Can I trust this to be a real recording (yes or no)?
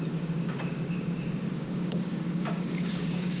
no